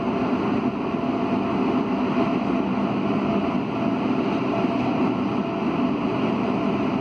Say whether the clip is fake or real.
real